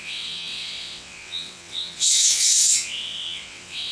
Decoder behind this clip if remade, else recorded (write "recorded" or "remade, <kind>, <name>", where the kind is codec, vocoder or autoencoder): remade, vocoder, WaveNeXt